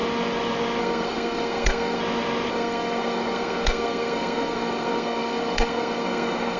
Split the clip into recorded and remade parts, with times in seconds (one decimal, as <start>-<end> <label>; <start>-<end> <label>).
0.0-0.8 recorded; 0.8-2.0 remade; 2.0-2.5 recorded; 2.5-6.6 remade